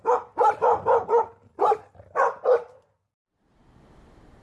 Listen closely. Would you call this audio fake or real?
real